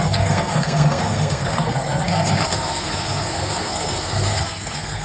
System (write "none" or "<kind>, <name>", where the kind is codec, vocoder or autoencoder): codec, SNAC